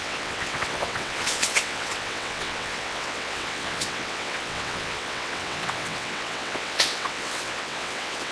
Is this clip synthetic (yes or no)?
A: yes